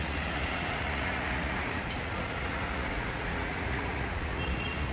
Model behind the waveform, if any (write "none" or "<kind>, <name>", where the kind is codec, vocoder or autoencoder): vocoder, Vocos